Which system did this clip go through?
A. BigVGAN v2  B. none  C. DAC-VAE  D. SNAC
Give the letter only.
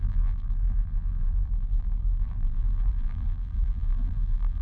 A